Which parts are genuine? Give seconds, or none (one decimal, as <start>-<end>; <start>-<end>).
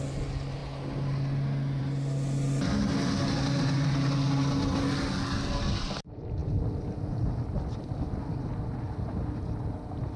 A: 0.0-10.2